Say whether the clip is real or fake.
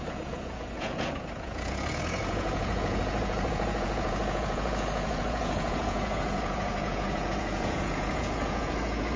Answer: fake